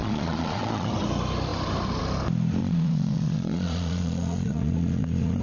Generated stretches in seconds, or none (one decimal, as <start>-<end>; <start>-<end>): 0.0-0.9; 2.6-5.4